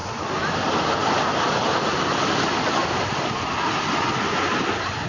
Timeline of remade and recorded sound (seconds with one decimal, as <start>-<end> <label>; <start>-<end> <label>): 0.0-5.1 recorded